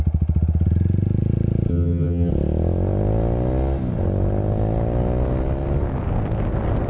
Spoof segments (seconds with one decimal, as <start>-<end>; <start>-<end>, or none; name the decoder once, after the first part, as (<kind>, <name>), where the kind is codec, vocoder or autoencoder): 1.7-2.3 (vocoder, HiFi-GAN)